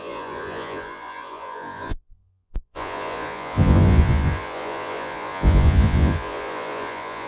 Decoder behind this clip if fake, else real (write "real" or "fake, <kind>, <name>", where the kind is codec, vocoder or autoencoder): fake, vocoder, Vocos